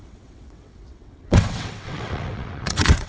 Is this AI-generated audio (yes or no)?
yes